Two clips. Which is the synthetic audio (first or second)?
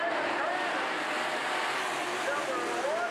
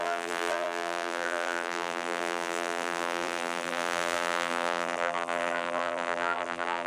second